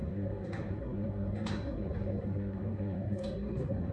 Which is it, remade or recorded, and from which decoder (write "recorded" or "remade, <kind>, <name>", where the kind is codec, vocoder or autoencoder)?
remade, codec, SNAC